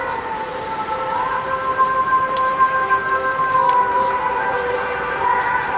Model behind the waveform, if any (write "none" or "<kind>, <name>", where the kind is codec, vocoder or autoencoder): vocoder, BigVGAN v2